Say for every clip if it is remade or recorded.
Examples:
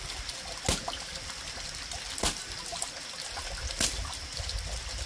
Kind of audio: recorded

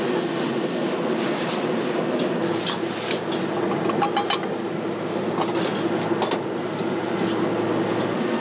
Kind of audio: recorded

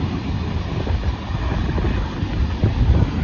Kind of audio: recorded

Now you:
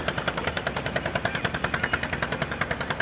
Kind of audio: recorded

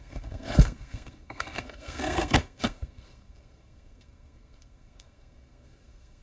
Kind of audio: remade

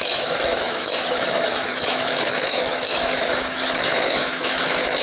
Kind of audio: remade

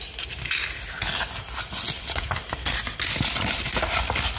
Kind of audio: recorded